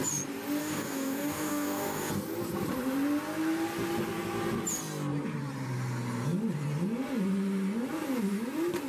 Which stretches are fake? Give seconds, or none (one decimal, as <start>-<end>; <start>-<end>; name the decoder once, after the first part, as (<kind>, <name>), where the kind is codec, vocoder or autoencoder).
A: 0.6-2.1 (codec, DAC)